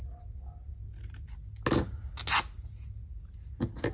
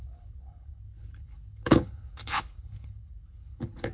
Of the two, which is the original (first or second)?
first